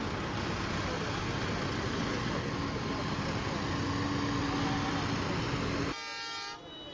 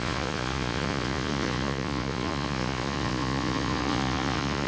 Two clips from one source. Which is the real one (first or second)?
first